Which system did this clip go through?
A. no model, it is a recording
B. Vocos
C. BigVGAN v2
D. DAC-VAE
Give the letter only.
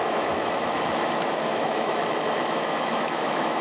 D